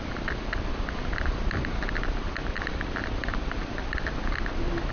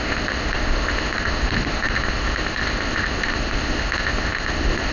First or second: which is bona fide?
first